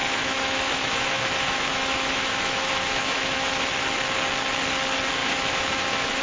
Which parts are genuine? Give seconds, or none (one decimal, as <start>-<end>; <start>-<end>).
3.7-5.2